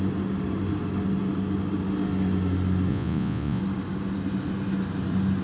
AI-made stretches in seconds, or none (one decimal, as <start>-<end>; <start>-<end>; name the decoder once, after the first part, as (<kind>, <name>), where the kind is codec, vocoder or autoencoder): 2.9-3.6 (vocoder, Vocos)